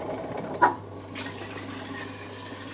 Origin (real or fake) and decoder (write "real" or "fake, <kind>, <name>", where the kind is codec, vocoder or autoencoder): fake, vocoder, BigVGAN v2